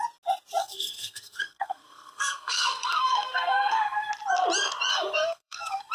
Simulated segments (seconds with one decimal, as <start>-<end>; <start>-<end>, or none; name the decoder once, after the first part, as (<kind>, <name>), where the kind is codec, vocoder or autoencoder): 0.6-4.1 (codec, SNAC); 4.9-5.9